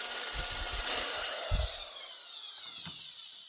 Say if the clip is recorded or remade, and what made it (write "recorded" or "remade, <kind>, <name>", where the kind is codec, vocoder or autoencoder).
recorded